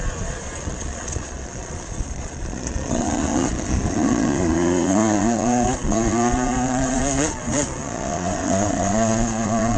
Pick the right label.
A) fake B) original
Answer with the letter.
A